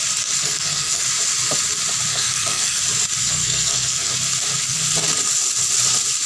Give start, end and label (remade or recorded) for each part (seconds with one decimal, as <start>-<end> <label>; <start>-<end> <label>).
0.0-0.4 recorded; 0.4-1.0 remade; 1.0-2.1 recorded; 2.1-2.8 remade; 2.8-3.2 recorded; 3.2-4.1 remade; 4.1-6.3 recorded